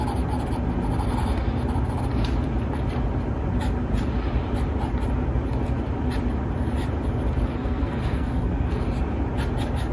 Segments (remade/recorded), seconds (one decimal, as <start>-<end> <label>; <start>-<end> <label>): 0.0-7.5 recorded; 7.5-8.8 remade; 8.8-9.9 recorded